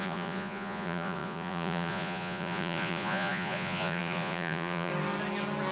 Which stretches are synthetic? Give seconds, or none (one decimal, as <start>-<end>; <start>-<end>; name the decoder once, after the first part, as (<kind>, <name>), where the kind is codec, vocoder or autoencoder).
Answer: 0.0-4.9 (vocoder, Vocos)